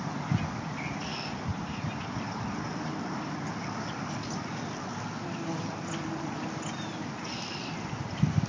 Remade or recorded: recorded